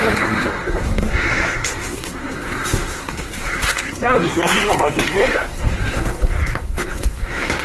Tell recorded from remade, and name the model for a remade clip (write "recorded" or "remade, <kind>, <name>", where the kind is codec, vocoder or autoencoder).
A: remade, codec, SNAC